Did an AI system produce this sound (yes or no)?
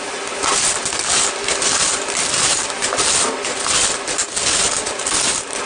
no